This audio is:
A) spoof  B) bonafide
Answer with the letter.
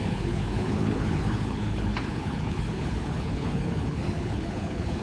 A